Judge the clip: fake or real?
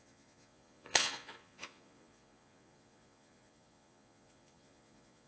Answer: fake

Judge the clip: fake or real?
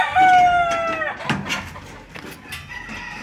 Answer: real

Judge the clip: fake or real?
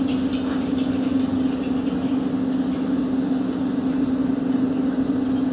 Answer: real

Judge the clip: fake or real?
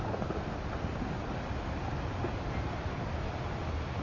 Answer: real